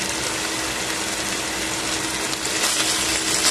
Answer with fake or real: real